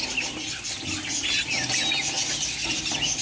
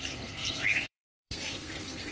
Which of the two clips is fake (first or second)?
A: second